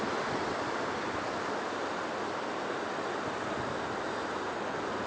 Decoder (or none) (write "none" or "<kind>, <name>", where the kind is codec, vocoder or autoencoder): none